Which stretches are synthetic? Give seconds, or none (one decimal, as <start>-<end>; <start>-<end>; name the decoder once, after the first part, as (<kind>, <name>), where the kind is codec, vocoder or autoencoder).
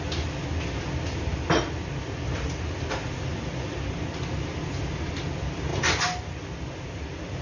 none